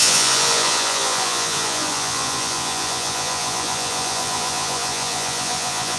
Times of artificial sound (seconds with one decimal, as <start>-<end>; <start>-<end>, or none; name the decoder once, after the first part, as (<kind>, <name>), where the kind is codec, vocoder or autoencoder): 0.0-6.0 (vocoder, Vocos)